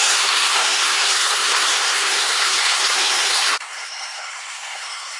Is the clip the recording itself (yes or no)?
no